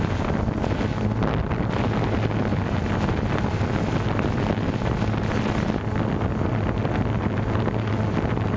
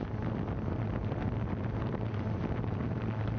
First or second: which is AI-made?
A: second